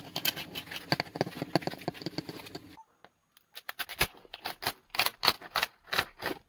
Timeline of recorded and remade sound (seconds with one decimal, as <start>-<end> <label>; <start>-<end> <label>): 0.0-6.5 recorded